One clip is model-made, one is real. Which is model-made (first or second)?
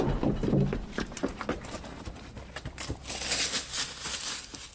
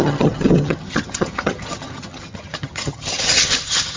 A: second